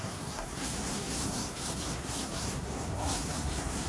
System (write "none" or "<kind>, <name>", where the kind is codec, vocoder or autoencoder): codec, SNAC